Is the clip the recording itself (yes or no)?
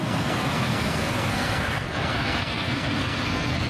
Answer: no